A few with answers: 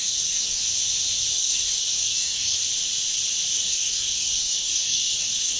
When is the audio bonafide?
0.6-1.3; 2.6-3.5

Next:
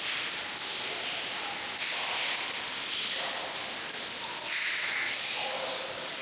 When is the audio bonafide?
0.0-5.0

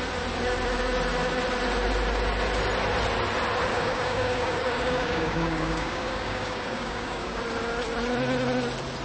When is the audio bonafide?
0.0-3.7; 7.4-9.0

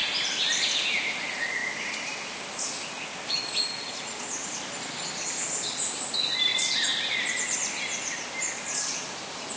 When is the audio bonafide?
0.0-9.6

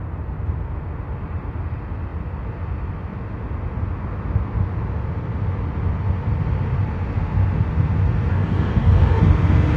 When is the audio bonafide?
0.0-8.3; 9.2-9.8

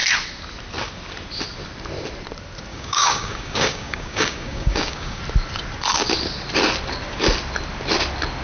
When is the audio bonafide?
0.0-2.7; 5.2-8.4